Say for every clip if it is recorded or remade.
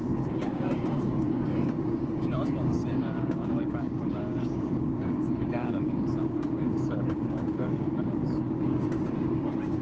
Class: remade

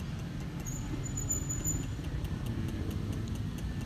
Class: recorded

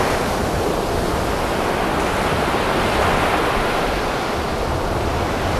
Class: recorded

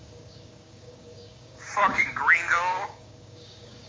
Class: remade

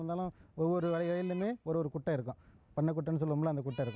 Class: recorded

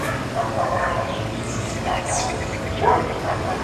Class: remade